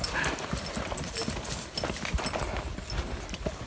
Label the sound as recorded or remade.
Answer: recorded